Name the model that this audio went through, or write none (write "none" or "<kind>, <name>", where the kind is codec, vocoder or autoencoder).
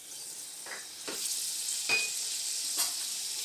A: none